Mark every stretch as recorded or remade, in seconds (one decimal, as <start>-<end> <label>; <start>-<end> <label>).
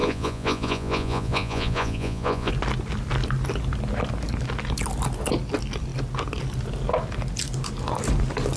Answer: 0.0-2.5 remade; 2.5-8.6 recorded